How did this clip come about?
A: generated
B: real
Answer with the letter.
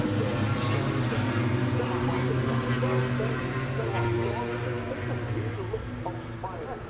B